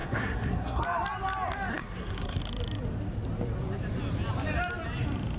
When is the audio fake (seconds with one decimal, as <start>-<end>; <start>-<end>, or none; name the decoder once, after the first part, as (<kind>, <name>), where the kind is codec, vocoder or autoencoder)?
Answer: 0.0-0.8 (codec, SNAC); 1.7-2.4